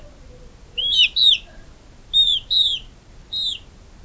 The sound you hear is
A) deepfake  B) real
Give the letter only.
B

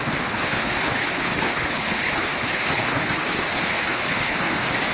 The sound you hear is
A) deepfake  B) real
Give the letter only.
A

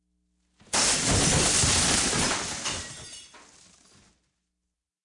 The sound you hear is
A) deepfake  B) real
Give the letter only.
B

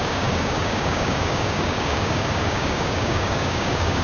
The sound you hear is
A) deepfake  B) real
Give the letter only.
A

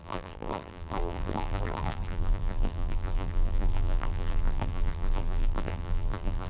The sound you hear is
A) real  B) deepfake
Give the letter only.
B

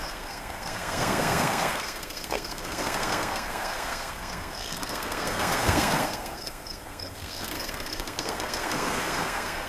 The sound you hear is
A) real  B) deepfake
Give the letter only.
B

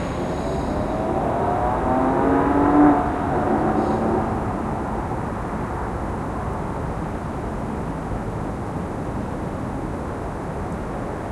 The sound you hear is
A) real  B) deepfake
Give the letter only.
A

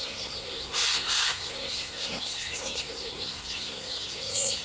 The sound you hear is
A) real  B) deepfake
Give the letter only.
B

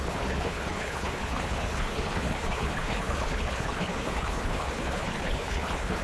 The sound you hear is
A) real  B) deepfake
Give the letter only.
B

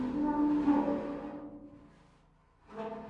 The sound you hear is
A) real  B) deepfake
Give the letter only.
A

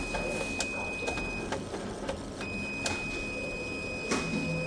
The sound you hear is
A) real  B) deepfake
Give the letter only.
A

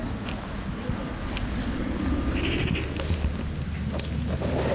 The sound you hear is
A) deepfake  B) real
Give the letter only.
B